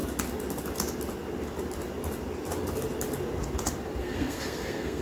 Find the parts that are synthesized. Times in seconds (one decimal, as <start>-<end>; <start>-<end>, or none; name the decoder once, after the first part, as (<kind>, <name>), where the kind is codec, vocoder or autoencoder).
4.0-5.0 (codec, SNAC)